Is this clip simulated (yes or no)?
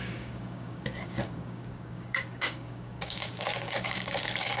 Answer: yes